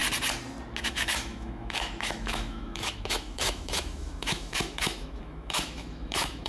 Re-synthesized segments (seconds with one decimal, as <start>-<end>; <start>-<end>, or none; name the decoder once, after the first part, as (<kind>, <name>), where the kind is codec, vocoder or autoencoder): 0.8-6.5 (autoencoder, DAC-VAE)